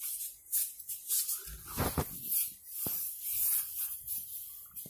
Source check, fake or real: fake